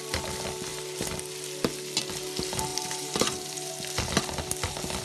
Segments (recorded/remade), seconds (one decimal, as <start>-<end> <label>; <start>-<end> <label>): 0.0-2.7 recorded; 2.7-3.7 remade; 3.7-5.0 recorded